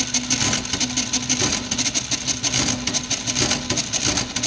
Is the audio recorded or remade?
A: recorded